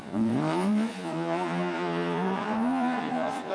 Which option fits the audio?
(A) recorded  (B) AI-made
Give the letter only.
B